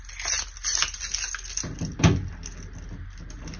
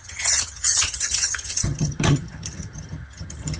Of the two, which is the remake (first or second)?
second